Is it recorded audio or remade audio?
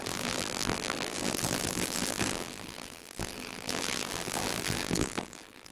remade